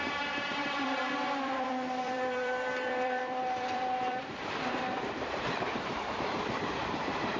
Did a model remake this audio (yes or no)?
yes